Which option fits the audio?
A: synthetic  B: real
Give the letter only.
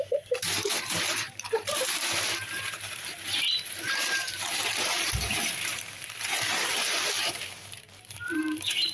A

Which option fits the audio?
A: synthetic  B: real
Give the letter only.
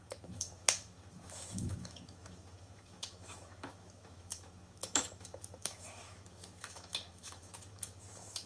A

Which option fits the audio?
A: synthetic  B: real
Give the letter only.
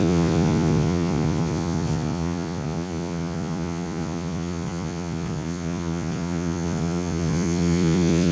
A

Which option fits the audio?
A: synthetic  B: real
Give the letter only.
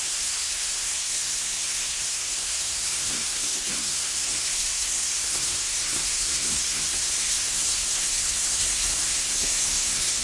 A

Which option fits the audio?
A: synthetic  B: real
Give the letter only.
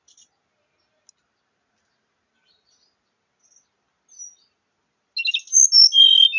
B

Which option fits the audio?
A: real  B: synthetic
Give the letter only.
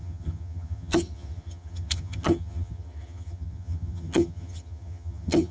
B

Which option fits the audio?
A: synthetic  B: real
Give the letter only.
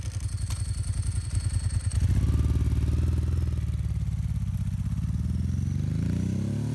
B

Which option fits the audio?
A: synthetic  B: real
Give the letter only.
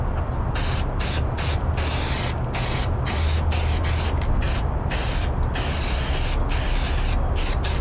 B